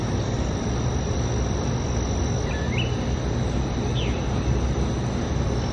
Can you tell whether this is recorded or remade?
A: recorded